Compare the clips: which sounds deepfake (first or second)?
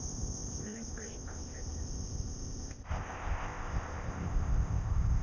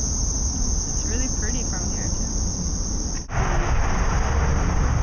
first